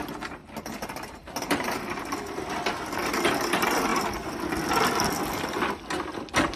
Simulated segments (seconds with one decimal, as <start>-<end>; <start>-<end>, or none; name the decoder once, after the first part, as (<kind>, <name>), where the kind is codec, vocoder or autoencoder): 0.4-1.8 (vocoder, BigVGAN v2)